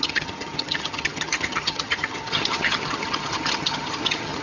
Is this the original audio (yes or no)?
no